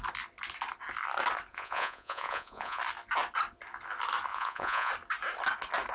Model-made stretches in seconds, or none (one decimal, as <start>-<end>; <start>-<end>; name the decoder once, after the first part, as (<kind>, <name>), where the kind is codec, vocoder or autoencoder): 1.5-2.8 (vocoder, Vocos); 4.3-4.9